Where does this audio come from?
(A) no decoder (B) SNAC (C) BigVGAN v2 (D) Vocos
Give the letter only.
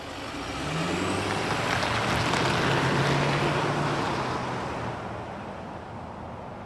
A